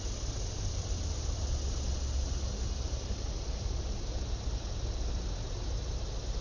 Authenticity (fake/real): real